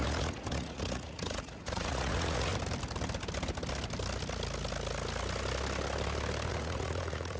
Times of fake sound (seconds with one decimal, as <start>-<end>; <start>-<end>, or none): 0.0-2.5; 6.5-7.4